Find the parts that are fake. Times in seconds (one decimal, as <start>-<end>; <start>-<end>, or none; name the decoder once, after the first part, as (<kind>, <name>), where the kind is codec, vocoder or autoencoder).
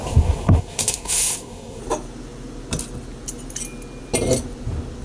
0.0-1.8 (codec, SNAC)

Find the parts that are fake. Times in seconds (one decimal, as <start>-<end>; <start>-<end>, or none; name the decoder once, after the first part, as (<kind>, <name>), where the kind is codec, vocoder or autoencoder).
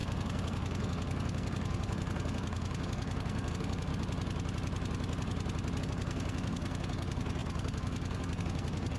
0.0-3.9 (codec, SNAC); 5.8-9.0